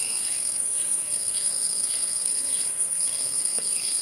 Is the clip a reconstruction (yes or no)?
yes